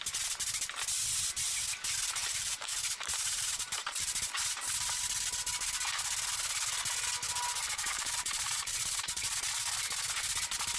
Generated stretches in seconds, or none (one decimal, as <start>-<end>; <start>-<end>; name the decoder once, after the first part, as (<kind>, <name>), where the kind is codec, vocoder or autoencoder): 2.2-4.5 (vocoder, BigVGAN v2); 7.6-9.4